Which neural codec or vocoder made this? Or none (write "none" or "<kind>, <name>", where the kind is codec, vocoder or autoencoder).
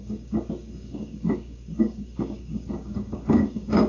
codec, DAC